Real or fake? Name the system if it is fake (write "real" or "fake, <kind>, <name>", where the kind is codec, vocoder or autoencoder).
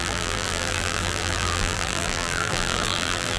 fake, vocoder, BigVGAN v2